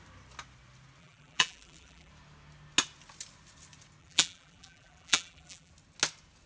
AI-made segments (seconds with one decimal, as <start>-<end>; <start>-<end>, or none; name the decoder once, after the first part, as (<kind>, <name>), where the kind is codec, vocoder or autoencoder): 1.0-2.1 (vocoder, BigVGAN v2); 4.0-5.7